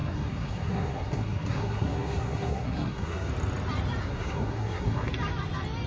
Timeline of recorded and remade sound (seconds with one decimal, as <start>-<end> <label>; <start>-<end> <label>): 0.0-3.3 remade; 3.3-4.0 recorded; 4.0-5.1 remade; 5.1-5.9 recorded